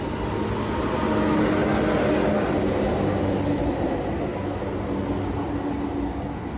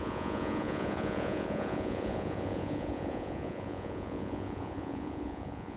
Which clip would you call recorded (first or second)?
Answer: first